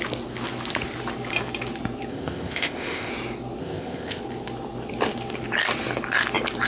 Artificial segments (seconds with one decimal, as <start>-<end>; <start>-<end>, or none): 2.1-3.1; 3.6-4.2